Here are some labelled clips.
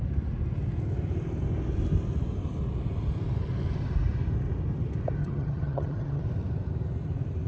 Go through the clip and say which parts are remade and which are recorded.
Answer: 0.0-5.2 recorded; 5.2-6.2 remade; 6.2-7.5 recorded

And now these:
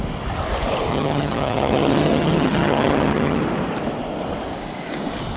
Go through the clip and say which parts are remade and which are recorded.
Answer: 0.0-0.9 recorded; 0.9-3.4 remade; 3.4-5.4 recorded

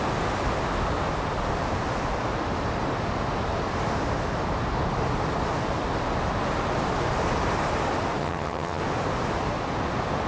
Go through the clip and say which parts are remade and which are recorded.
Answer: 0.0-8.2 recorded; 8.2-8.8 remade; 8.8-10.3 recorded

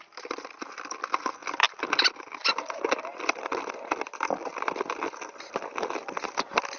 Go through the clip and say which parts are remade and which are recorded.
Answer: 0.0-6.8 recorded

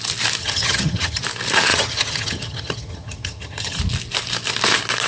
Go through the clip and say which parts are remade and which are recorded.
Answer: 0.0-0.4 recorded; 0.4-1.2 remade; 1.2-1.7 recorded; 1.7-3.8 remade; 3.8-5.1 recorded

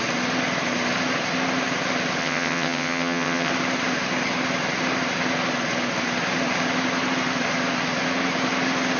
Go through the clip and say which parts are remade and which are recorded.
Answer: 0.0-2.2 recorded; 2.2-3.5 remade; 3.5-9.0 recorded

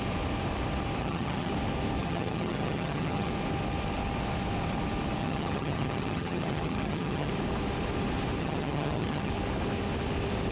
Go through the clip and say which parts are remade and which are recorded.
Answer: 0.0-1.0 recorded; 1.0-1.5 remade; 1.5-2.0 recorded; 2.0-3.3 remade; 3.3-5.2 recorded; 5.2-7.3 remade; 7.3-8.4 recorded; 8.4-9.3 remade; 9.3-10.5 recorded

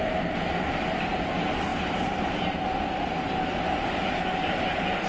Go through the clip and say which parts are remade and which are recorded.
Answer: 0.0-5.1 recorded